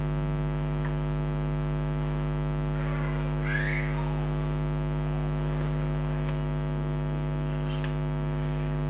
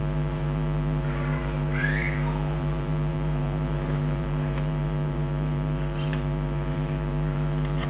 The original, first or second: first